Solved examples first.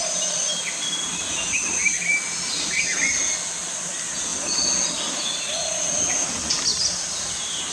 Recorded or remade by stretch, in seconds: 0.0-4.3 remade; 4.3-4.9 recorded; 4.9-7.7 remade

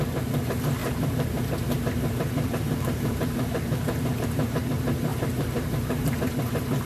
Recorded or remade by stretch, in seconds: 0.0-0.8 recorded; 0.8-4.6 remade; 4.6-5.1 recorded; 5.1-6.2 remade; 6.2-6.9 recorded

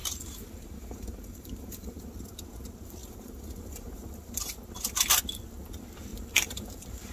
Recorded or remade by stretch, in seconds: 0.0-2.1 remade; 2.1-3.0 recorded; 3.0-4.4 remade; 4.4-6.1 recorded; 6.1-7.1 remade